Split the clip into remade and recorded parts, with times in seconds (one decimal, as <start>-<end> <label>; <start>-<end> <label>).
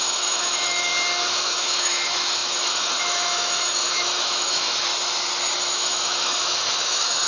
0.0-0.9 remade; 0.9-1.4 recorded; 1.4-4.9 remade; 4.9-5.6 recorded; 5.6-7.3 remade